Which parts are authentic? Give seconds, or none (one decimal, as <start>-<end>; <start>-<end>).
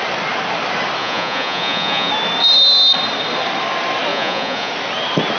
0.0-1.0; 2.1-4.1; 4.7-5.4